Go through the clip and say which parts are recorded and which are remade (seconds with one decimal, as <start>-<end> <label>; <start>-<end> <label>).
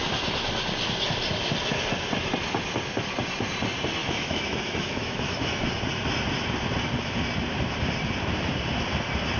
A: 0.0-4.0 recorded; 4.0-5.7 remade; 5.7-9.4 recorded